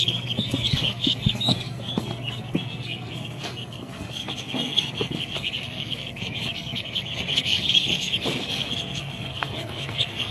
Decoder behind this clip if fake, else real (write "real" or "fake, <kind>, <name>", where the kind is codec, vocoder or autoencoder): fake, codec, SNAC